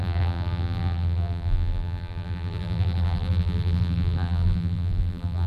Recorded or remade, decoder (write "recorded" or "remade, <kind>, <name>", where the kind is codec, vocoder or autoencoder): remade, vocoder, BigVGAN v2